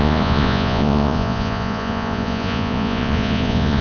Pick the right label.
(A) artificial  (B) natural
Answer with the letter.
A